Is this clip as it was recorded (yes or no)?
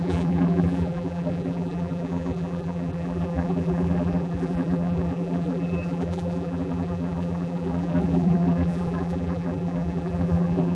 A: no